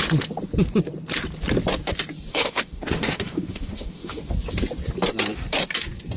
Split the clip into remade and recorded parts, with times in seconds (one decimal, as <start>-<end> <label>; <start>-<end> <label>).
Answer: 0.0-2.3 recorded; 2.3-4.2 remade; 4.2-6.2 recorded